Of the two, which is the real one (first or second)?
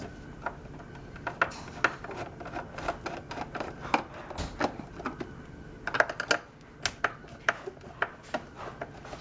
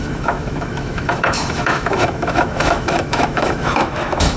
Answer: first